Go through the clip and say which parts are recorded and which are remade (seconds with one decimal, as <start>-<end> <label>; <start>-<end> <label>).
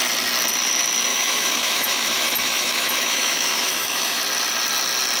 0.0-1.1 recorded; 1.1-4.2 remade; 4.2-5.2 recorded